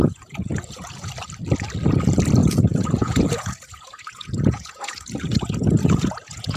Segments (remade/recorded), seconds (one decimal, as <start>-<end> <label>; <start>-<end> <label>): 0.0-1.1 remade; 1.1-2.4 recorded; 2.4-6.6 remade